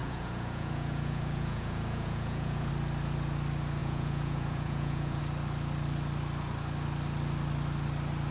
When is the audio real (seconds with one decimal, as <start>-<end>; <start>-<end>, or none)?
2.7-3.8; 5.2-8.3